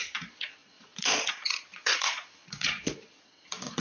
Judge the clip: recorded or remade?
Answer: remade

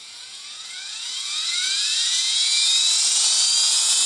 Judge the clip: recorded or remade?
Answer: remade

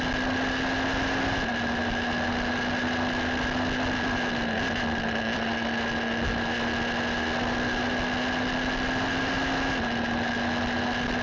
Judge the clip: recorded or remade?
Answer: recorded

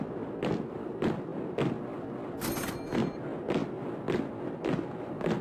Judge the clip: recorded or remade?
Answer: recorded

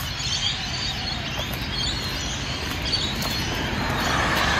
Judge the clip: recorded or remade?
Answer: recorded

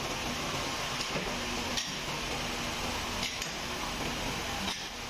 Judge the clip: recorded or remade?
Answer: recorded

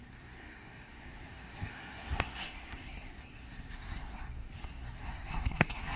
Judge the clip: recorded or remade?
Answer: remade